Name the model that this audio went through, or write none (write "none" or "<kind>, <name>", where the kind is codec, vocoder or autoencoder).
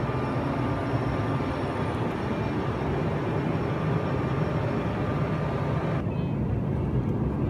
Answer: none